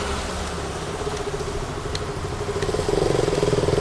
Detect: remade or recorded recorded